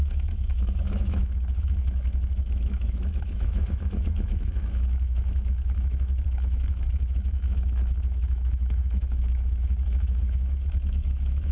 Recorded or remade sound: remade